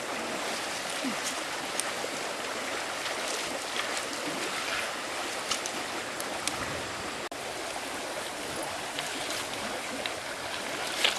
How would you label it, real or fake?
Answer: real